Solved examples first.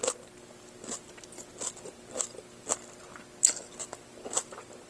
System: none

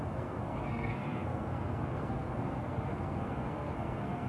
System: codec, SNAC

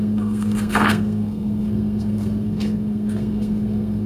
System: codec, SNAC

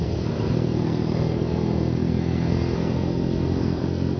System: codec, SNAC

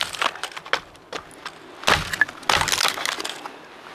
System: none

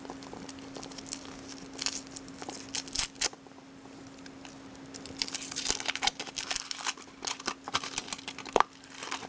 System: none